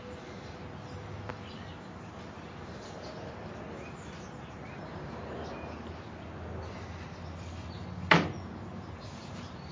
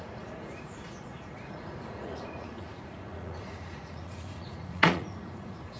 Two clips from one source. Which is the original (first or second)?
first